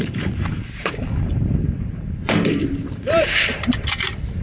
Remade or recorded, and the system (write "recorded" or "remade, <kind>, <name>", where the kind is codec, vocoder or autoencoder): remade, vocoder, BigVGAN v2